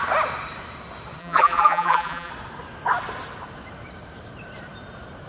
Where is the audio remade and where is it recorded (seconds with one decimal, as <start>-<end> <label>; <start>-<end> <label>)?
0.0-1.2 recorded; 1.2-2.3 remade; 2.3-5.3 recorded